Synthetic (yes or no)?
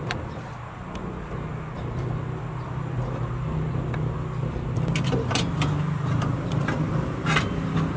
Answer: no